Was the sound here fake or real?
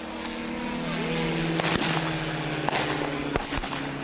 real